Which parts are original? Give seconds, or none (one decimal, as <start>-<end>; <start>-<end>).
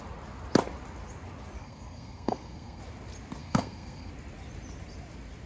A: 0.0-1.6; 2.8-3.4; 4.1-5.5